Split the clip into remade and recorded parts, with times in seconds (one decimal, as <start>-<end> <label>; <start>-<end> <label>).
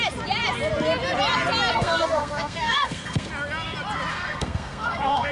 0.0-1.7 recorded; 1.7-3.3 remade; 3.3-4.1 recorded; 4.1-5.3 remade